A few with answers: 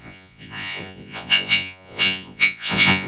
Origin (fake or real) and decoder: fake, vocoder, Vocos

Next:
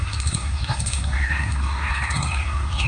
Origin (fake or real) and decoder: fake, codec, SNAC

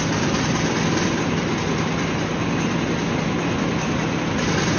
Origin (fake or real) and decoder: real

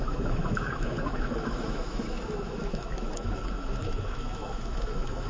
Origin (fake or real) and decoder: fake, autoencoder, DAC-VAE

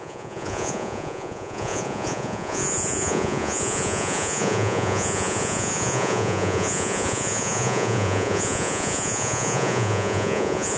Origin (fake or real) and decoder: fake, vocoder, Vocos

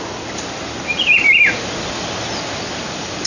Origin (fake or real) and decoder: real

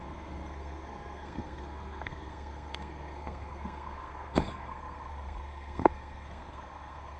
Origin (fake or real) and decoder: fake, codec, SNAC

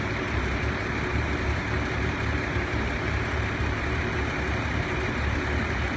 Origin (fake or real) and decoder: fake, vocoder, BigVGAN v2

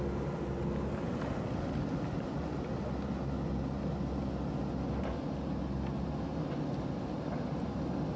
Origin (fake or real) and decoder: real